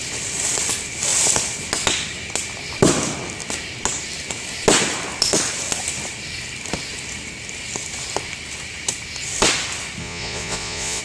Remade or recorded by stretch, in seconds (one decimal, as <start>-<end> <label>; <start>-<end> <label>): 0.0-10.0 recorded; 10.0-11.0 remade